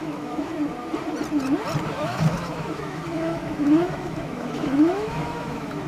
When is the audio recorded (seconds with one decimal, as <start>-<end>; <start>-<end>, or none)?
0.5-1.9